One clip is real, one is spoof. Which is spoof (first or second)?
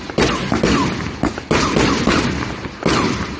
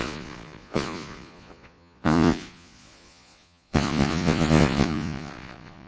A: second